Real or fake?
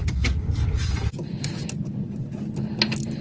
real